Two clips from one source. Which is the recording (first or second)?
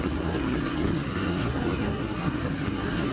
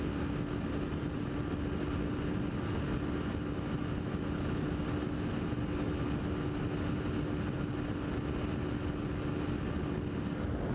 second